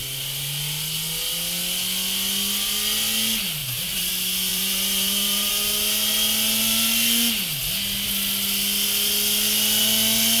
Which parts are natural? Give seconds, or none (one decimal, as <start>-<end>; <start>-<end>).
0.0-3.6; 4.1-4.5; 5.5-10.4